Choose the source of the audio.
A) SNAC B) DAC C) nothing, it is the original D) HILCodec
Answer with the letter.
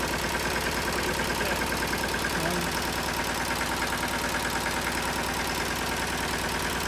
C